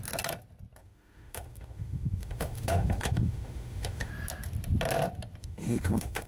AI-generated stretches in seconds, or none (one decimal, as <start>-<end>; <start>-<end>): 0.8-4.1; 5.4-6.3

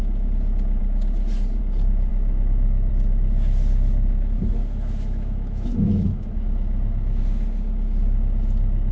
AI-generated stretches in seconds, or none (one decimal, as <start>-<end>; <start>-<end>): 2.1-2.9; 4.6-7.2

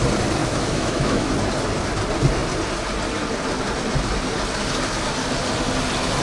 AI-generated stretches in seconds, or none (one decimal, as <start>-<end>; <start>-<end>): 0.4-1.3

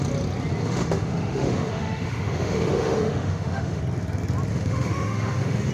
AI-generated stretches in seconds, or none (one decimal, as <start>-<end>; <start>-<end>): 0.6-3.8; 4.5-5.7

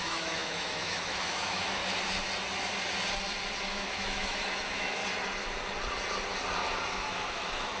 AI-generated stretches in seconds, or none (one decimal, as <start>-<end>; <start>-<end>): 0.0-1.8; 3.7-5.0; 6.9-7.8

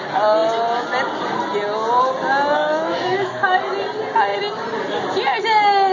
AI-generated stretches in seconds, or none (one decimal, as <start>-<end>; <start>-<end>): 2.6-3.6

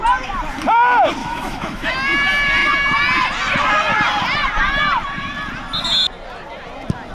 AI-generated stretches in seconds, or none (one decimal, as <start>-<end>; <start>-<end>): 1.2-1.9

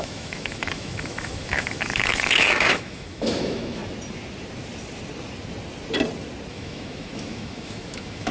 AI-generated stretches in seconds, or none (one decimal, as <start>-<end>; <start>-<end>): 0.0-3.8; 6.5-8.3